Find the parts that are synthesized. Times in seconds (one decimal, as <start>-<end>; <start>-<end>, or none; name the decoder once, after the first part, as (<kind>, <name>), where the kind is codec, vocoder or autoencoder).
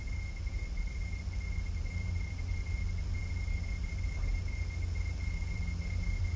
none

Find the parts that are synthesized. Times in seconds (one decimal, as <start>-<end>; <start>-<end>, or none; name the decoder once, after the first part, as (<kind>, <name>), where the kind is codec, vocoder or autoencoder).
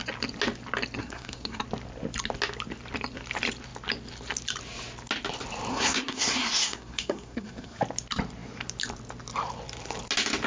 1.0-1.6 (codec, SNAC); 5.7-7.8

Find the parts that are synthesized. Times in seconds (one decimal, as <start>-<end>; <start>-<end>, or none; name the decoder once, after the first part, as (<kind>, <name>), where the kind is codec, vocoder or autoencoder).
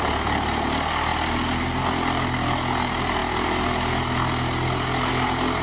none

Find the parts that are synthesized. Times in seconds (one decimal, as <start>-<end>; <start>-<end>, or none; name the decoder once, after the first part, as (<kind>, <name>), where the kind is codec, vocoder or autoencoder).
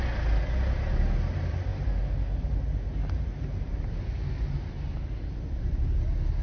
none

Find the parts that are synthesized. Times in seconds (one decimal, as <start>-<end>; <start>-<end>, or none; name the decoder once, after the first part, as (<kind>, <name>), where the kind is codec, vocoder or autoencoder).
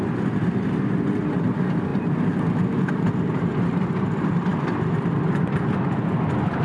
none